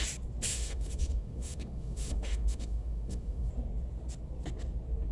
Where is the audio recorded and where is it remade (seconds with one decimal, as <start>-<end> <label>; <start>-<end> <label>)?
0.0-0.5 recorded; 0.5-3.5 remade; 3.5-5.1 recorded